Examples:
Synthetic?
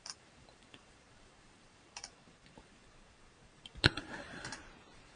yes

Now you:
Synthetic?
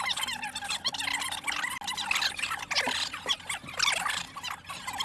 no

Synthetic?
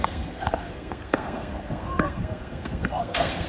yes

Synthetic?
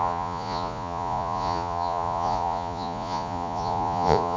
yes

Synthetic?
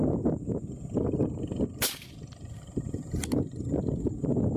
no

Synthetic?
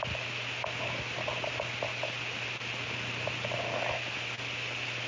no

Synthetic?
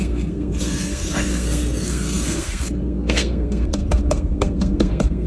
yes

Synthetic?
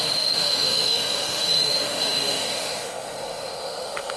yes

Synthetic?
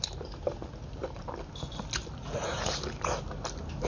no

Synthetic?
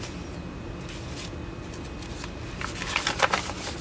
no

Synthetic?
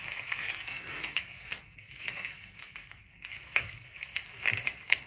yes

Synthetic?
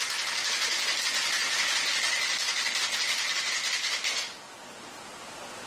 no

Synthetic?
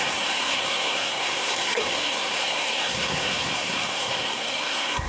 yes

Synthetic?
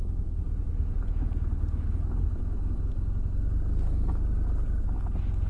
no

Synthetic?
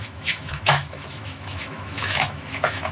yes